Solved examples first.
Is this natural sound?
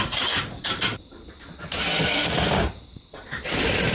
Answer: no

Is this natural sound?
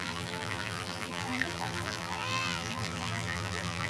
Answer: no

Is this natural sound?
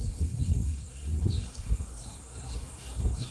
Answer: no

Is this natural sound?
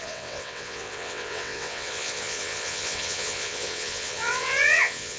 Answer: no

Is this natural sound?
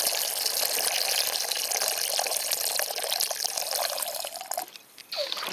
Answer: yes